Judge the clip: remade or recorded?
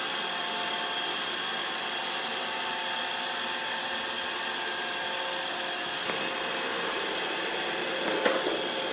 recorded